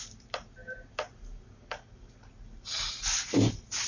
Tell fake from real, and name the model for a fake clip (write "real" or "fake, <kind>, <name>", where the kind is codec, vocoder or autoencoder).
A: real